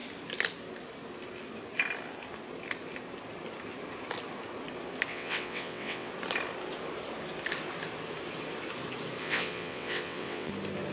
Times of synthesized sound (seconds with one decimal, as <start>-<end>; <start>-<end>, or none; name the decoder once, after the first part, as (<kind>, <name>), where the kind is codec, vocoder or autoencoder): 5.1-6.1 (vocoder, WaveNeXt); 9.2-10.5